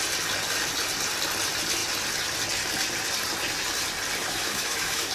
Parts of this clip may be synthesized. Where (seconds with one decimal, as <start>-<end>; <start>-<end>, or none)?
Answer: 4.2-5.1